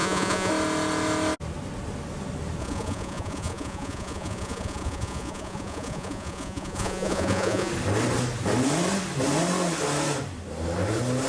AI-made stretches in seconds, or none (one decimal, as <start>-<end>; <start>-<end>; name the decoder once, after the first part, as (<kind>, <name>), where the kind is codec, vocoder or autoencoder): 0.0-0.5 (vocoder, Vocos); 2.6-7.7